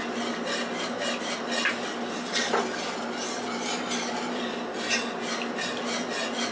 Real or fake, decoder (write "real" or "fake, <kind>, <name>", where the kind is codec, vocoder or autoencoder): real